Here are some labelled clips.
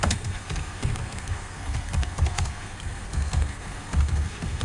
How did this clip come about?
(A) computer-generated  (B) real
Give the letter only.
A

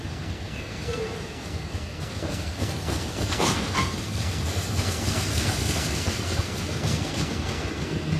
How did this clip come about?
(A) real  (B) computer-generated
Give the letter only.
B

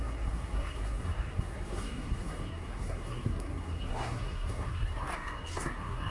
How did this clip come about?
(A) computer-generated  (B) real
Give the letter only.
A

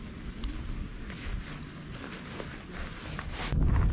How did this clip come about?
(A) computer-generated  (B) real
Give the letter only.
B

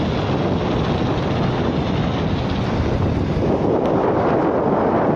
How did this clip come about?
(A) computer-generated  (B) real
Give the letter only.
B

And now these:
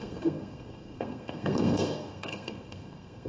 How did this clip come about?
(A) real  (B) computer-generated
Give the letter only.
B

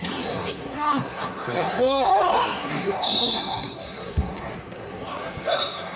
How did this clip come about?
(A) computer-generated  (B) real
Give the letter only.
A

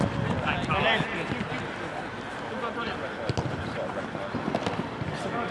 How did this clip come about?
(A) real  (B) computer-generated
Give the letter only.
A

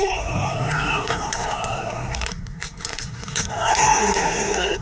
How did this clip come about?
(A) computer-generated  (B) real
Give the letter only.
A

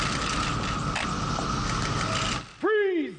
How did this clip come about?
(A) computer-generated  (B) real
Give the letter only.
B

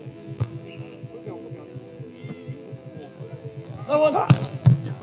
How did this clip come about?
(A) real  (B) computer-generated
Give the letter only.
B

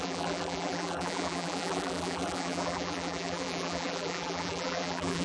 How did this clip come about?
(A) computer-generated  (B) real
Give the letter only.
A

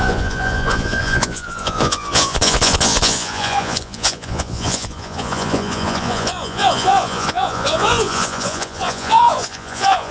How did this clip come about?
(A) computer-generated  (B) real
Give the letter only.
A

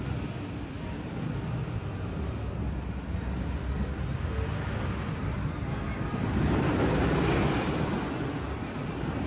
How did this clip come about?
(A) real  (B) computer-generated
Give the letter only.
A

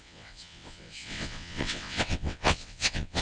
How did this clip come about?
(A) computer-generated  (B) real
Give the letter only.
A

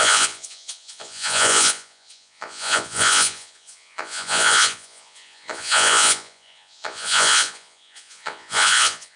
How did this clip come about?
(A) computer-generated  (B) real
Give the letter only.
A